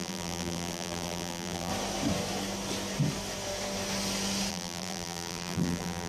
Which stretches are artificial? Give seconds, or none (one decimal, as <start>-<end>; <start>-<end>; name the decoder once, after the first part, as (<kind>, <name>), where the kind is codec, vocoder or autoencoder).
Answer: 0.0-1.7 (vocoder, BigVGAN v2); 4.5-6.1

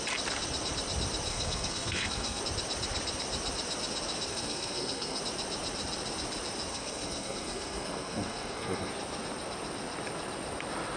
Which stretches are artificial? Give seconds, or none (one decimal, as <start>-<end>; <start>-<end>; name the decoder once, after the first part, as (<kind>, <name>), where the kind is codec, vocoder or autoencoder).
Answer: 1.3-2.4 (codec, SNAC); 4.3-5.2; 6.7-8.9